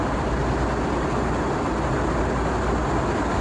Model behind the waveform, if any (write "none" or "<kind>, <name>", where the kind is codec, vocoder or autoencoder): none